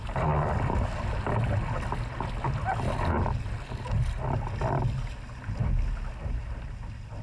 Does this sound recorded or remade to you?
recorded